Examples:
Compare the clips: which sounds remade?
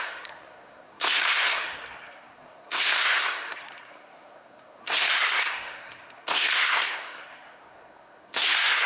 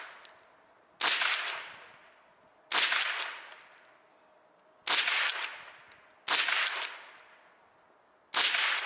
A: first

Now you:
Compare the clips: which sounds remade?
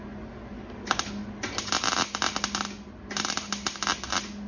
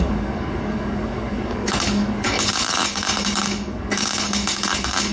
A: second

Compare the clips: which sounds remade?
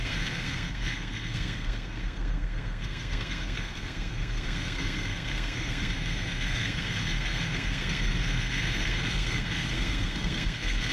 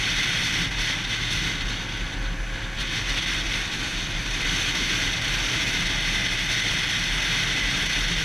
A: first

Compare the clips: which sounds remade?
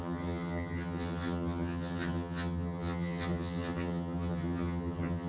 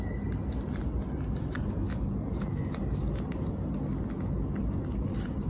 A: first